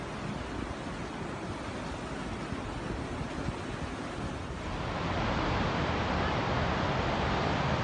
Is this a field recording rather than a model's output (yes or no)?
yes